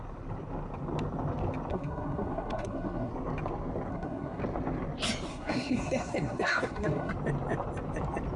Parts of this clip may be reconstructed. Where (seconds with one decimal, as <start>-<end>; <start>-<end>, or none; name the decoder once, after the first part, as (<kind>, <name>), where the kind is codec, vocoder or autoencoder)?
1.7-3.1 (codec, SNAC); 3.9-4.4; 5.3-7.1